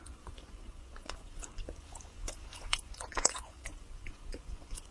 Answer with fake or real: fake